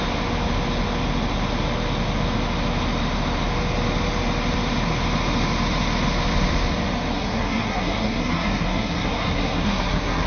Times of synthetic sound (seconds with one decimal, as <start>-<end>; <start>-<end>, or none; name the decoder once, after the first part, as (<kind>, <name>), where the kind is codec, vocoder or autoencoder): 7.1-10.3 (codec, SNAC)